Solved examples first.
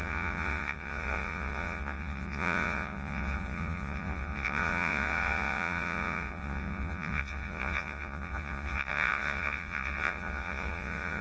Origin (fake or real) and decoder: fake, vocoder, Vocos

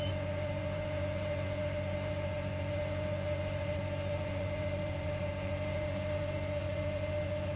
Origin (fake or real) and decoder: fake, vocoder, Vocos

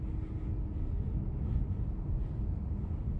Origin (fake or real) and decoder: real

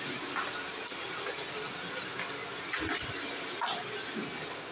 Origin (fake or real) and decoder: real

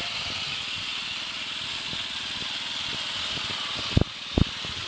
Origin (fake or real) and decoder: real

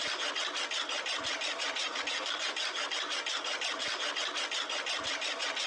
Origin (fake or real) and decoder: real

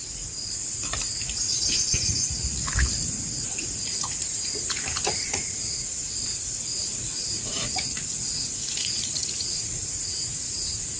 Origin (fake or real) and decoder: fake, vocoder, Vocos